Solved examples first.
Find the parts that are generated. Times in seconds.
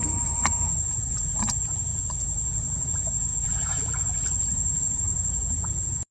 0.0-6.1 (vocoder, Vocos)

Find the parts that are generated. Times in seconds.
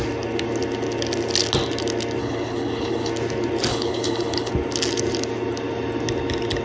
2.2-3.1 (codec, HILCodec); 3.7-4.5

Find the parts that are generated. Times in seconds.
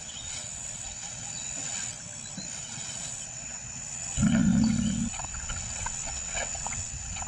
0.0-1.9 (vocoder, WaveNeXt); 2.6-7.3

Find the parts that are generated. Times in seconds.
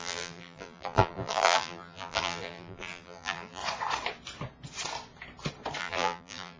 0.0-3.6 (vocoder, BigVGAN v2); 5.8-6.6